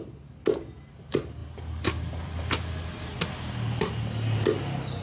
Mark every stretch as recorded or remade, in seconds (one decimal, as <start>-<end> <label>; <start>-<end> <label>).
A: 0.0-5.0 recorded